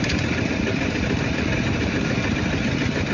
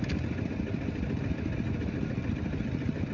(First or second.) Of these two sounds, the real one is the second